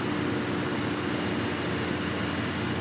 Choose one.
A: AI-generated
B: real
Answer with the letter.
B